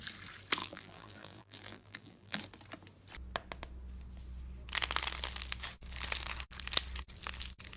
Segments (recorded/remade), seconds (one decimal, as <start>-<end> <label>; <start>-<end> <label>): 0.0-0.6 recorded; 0.6-2.4 remade; 2.4-7.8 recorded